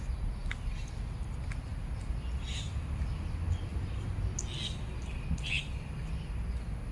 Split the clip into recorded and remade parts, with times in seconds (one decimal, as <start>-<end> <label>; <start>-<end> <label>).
0.0-6.9 recorded